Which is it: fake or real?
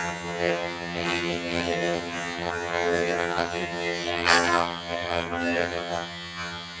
fake